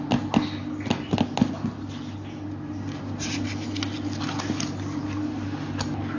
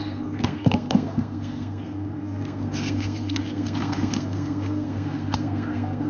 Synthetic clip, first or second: second